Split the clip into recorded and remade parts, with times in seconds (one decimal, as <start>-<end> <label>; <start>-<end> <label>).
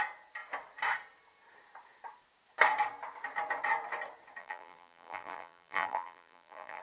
0.0-4.4 recorded; 4.4-6.8 remade